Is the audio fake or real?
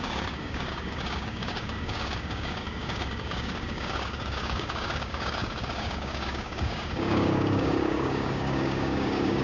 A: fake